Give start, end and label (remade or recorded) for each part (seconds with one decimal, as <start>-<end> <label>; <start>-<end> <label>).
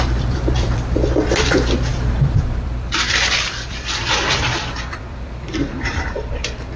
0.0-6.8 remade